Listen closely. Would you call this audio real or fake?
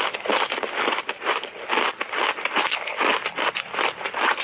real